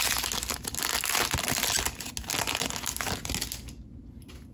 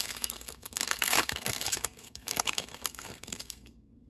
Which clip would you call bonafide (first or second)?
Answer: first